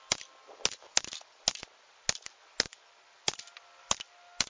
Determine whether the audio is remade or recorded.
recorded